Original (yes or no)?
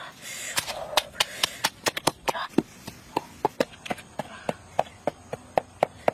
no